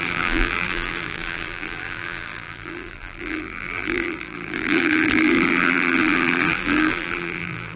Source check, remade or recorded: remade